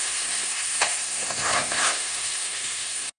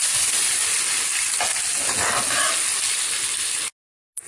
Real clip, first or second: second